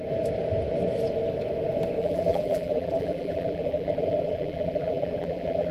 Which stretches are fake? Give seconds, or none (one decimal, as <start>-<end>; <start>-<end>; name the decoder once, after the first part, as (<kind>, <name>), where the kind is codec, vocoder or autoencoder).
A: 2.0-5.7 (vocoder, BigVGAN v2)